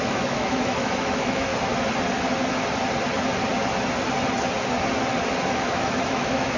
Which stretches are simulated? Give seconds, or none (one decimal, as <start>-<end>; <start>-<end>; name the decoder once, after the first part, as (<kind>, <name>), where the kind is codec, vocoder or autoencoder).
0.0-1.5 (autoencoder, DAC-VAE); 5.5-6.6